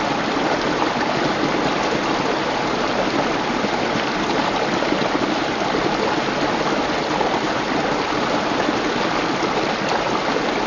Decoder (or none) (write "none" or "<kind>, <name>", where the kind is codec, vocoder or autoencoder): none